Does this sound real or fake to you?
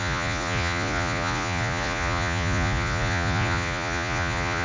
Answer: fake